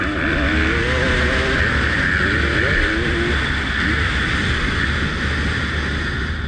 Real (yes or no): yes